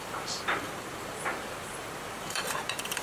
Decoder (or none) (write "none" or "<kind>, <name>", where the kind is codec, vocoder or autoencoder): vocoder, BigVGAN v2